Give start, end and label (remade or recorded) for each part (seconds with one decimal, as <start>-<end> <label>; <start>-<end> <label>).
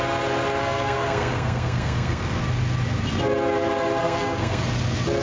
0.0-0.6 recorded; 0.6-2.4 remade; 2.4-4.0 recorded; 4.0-4.6 remade; 4.6-5.2 recorded